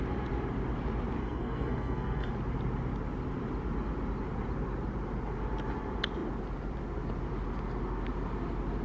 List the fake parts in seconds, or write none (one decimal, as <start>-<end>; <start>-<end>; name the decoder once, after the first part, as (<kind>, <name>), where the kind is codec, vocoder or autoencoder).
1.2-2.3 (codec, SNAC)